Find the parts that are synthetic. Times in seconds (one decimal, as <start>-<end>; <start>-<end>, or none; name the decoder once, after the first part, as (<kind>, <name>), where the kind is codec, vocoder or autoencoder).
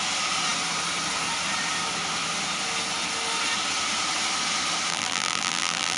4.9-6.0 (vocoder, BigVGAN v2)